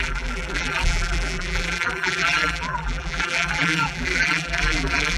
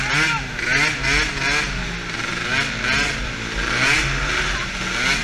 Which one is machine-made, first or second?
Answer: first